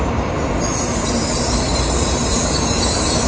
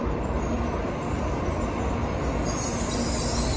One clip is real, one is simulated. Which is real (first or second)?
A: second